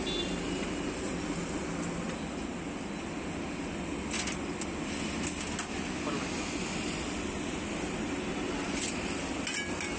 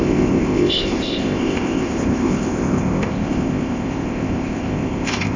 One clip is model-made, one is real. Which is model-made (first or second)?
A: second